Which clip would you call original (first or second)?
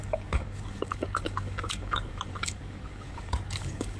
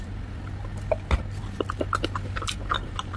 second